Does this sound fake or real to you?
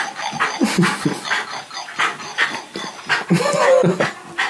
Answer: real